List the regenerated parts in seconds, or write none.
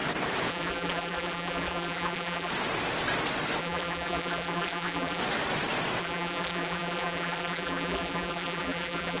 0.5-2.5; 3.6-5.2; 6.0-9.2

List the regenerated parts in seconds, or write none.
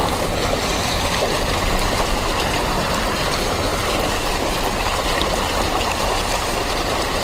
3.7-6.1